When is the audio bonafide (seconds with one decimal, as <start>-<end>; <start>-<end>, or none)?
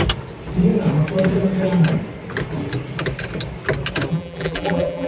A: 0.0-4.1